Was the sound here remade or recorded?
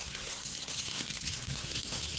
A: remade